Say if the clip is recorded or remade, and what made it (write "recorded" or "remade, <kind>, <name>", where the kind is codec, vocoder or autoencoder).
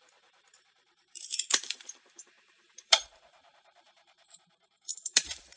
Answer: remade, vocoder, BigVGAN v2